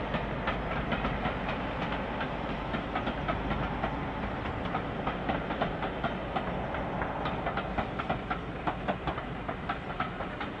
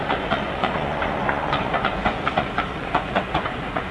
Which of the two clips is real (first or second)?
first